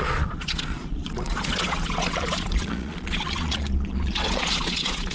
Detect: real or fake fake